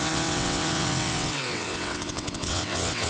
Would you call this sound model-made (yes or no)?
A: yes